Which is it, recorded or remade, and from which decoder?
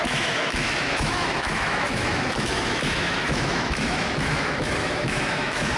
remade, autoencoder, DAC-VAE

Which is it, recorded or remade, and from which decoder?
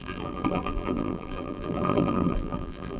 remade, vocoder, BigVGAN v2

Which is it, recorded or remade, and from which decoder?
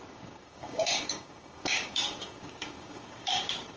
remade, codec, DAC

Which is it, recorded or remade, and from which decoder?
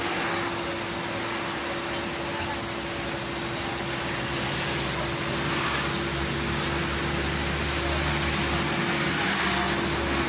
recorded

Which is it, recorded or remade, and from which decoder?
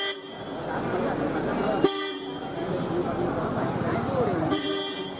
recorded